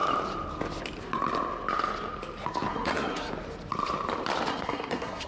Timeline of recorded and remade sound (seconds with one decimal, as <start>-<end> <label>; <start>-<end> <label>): 0.0-2.7 recorded; 2.7-3.3 remade; 3.3-4.5 recorded; 4.5-5.3 remade